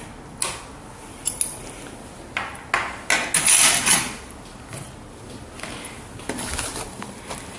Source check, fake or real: real